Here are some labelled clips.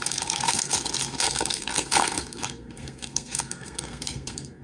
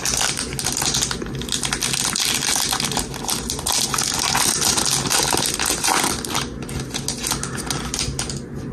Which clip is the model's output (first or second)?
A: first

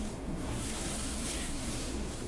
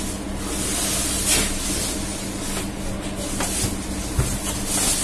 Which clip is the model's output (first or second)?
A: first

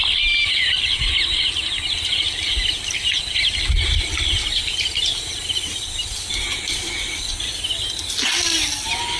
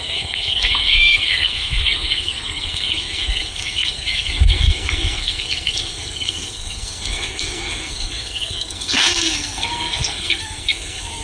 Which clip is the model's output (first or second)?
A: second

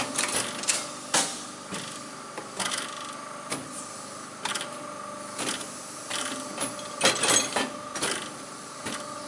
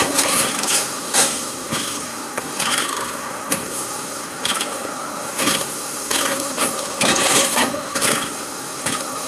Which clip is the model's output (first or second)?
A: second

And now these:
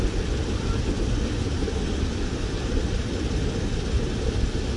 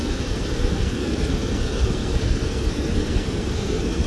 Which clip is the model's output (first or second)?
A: second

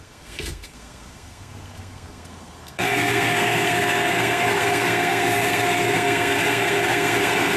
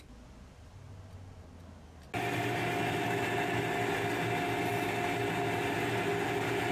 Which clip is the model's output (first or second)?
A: first